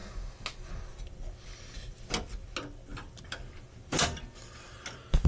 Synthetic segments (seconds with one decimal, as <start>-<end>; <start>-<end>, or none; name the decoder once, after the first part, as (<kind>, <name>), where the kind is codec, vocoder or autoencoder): none